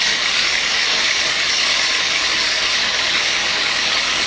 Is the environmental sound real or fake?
fake